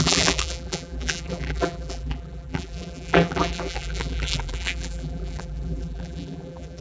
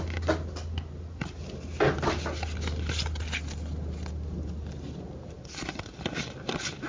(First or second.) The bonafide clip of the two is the second